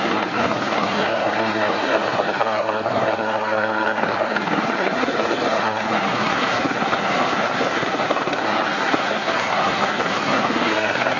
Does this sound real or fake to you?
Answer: fake